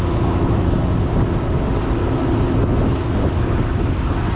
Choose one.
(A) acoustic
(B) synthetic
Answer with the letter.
A